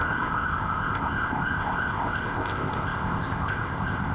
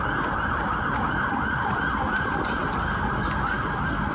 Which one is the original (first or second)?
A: second